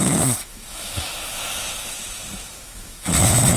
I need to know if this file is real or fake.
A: fake